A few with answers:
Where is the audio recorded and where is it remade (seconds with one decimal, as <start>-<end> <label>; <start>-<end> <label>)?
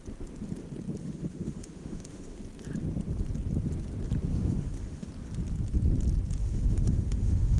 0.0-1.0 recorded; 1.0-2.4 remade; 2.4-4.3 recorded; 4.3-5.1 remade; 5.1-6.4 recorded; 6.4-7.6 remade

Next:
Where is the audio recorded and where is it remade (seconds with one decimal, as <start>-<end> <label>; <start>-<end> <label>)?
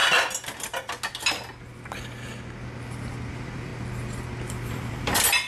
0.0-3.3 recorded; 3.3-3.7 remade; 3.7-4.7 recorded; 4.7-5.5 remade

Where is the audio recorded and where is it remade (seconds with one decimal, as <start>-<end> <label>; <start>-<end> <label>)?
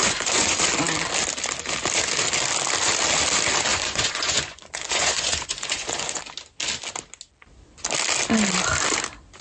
0.0-0.6 remade; 0.6-3.7 recorded; 3.7-6.2 remade; 6.2-9.4 recorded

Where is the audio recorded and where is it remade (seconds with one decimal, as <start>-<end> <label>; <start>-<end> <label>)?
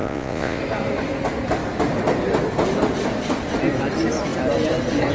0.0-0.6 remade; 0.6-5.1 recorded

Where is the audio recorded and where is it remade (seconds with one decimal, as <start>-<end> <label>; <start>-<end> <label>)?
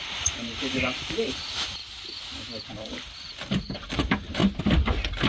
0.0-1.8 remade; 1.8-2.7 recorded; 2.7-4.4 remade; 4.4-5.3 recorded